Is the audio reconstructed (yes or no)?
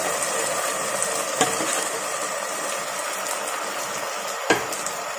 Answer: no